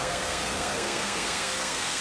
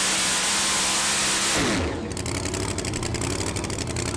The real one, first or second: second